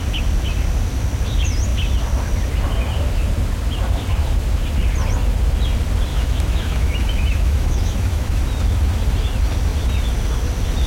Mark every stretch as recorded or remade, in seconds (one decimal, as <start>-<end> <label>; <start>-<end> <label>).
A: 0.0-6.1 recorded; 6.1-8.4 remade; 8.4-10.9 recorded